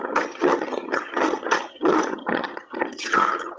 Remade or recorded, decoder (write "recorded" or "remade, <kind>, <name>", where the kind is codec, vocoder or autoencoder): remade, vocoder, HiFi-GAN